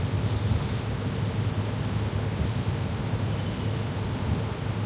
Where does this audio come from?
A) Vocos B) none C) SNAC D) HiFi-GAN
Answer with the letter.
B